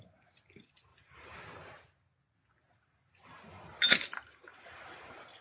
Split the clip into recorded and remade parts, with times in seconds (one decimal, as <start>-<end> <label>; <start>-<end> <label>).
0.0-0.9 recorded; 0.9-1.4 remade; 1.4-4.1 recorded; 4.1-5.4 remade